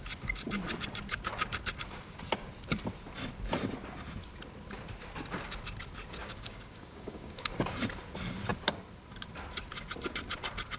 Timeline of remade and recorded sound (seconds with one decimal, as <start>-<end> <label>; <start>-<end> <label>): 0.0-6.2 recorded; 6.2-7.5 remade; 7.5-10.8 recorded